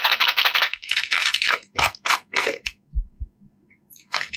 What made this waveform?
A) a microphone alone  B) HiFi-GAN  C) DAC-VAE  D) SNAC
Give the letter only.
D